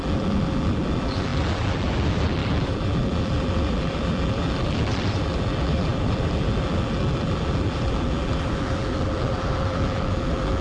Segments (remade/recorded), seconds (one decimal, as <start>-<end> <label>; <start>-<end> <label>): 0.0-10.6 remade